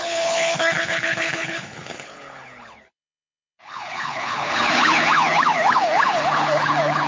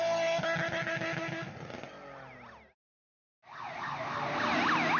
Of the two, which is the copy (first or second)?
first